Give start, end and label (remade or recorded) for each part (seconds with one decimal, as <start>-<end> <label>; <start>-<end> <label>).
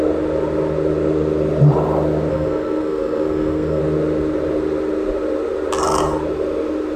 0.0-2.3 recorded; 2.3-3.8 remade; 3.8-7.0 recorded